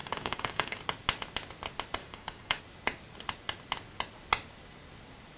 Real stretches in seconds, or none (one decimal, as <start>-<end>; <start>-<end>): 0.8-2.0; 2.6-5.4